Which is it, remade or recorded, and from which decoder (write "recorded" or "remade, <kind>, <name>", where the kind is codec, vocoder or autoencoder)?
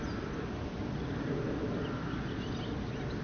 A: recorded